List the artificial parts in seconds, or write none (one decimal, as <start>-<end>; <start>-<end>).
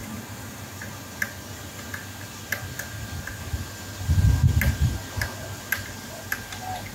none